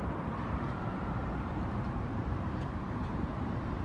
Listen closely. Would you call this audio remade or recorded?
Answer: remade